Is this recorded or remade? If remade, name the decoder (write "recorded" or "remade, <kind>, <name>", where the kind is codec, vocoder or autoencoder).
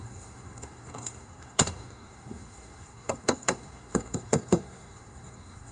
remade, codec, SNAC